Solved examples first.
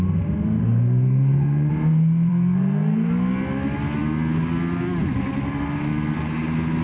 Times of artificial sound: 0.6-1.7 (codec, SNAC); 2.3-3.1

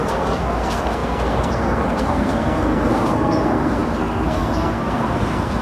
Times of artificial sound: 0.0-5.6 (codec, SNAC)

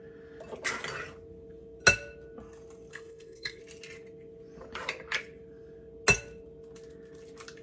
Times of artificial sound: 2.9-3.6 (codec, SNAC)